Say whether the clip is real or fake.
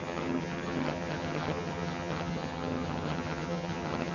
fake